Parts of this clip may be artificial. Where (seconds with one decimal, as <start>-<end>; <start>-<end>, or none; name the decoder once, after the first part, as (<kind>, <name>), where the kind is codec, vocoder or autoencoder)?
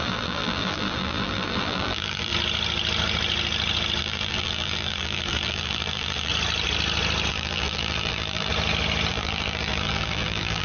0.0-2.3 (vocoder, BigVGAN v2); 4.0-6.3; 7.3-8.5; 9.1-10.6